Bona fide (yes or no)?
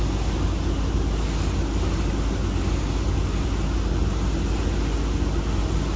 yes